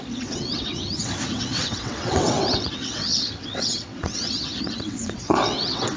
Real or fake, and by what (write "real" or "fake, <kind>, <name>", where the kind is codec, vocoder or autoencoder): fake, vocoder, WaveNeXt